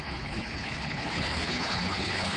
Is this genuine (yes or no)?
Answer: no